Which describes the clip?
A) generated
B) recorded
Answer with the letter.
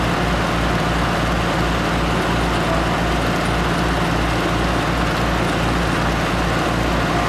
B